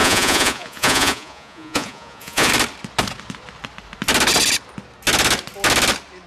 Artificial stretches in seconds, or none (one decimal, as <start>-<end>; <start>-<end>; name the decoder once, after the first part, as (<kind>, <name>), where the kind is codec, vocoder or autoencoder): 0.0-2.5 (vocoder, Vocos)